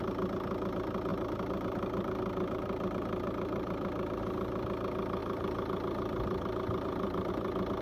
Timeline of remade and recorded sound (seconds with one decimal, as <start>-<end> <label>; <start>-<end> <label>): 0.0-1.1 recorded; 1.1-4.2 remade; 4.2-5.2 recorded; 5.2-7.3 remade; 7.3-7.8 recorded